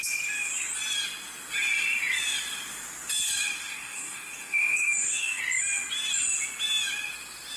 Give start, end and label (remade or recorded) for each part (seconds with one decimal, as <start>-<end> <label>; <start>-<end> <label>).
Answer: 0.0-3.6 recorded; 3.6-5.4 remade; 5.4-7.6 recorded